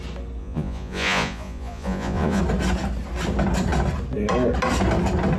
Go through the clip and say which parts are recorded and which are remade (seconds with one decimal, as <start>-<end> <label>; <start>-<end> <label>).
0.0-0.4 recorded; 0.4-2.4 remade; 2.4-5.4 recorded